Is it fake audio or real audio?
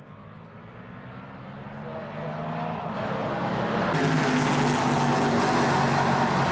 real